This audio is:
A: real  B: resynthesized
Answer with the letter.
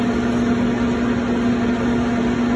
A